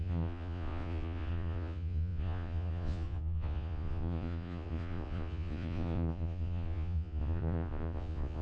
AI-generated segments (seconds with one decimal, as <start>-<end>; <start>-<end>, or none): 0.0-8.4